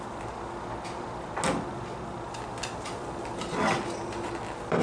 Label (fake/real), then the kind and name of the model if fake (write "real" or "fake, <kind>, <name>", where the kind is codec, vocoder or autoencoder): real